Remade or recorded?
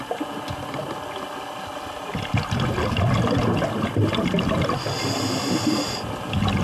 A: recorded